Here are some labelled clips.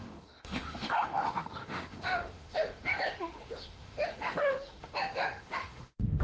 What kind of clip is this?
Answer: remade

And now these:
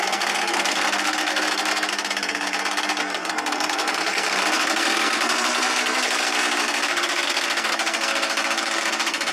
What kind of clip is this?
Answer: remade